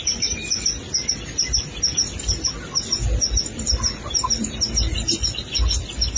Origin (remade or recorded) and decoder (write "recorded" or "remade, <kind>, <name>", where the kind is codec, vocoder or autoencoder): recorded